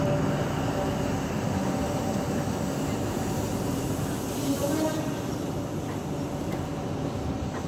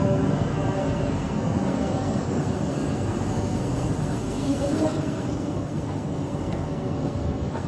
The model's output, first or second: second